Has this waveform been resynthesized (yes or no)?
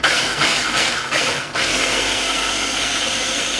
yes